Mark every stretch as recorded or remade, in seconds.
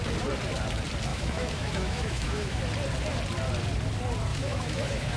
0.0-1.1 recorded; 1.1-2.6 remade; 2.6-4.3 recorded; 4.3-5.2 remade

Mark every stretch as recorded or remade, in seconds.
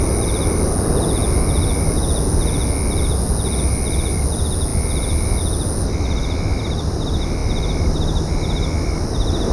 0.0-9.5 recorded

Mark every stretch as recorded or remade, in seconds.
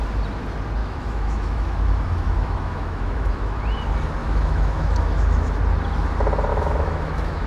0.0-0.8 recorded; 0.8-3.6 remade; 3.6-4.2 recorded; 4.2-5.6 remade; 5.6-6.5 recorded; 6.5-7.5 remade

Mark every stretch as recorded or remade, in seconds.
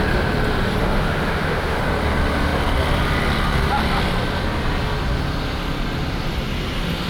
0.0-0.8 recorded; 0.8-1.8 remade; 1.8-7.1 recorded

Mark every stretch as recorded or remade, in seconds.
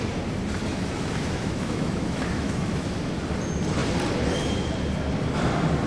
0.0-0.7 recorded; 0.7-3.1 remade; 3.1-5.9 recorded